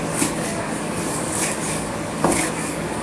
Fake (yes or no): yes